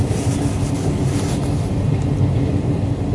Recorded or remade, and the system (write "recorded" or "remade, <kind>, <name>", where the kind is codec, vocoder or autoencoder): recorded